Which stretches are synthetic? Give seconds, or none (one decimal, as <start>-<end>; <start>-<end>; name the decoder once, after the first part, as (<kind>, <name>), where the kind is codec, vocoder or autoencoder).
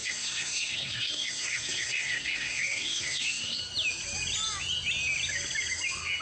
0.0-3.6 (codec, SNAC)